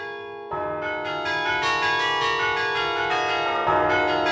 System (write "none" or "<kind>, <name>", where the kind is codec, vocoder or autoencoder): none